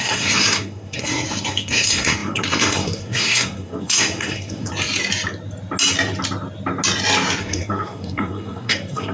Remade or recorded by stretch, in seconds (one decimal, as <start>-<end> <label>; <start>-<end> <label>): 0.0-4.7 remade; 4.7-7.4 recorded; 7.4-9.1 remade